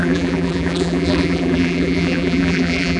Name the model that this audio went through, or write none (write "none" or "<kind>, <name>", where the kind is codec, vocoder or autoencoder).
vocoder, BigVGAN v2